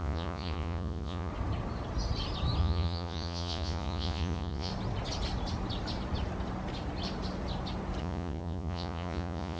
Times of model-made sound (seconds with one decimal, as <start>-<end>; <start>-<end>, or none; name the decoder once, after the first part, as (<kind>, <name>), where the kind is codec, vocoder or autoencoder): 0.0-1.3 (vocoder, Vocos); 2.6-4.7; 8.0-9.6